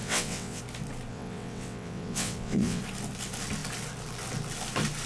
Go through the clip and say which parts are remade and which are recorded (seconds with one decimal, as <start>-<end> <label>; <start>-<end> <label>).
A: 0.0-0.6 remade; 0.6-1.1 recorded; 1.1-2.8 remade; 2.8-5.1 recorded